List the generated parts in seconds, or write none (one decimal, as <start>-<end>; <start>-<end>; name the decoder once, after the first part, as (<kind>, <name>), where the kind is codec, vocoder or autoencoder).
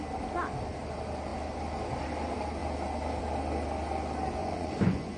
4.4-5.2 (vocoder, Vocos)